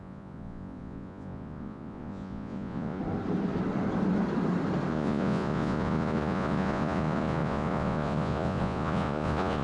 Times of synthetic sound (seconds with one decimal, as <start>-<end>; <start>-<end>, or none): 0.0-3.0; 4.9-9.6